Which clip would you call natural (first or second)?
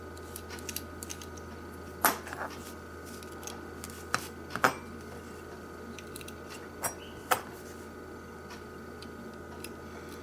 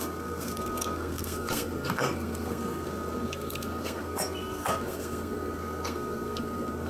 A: first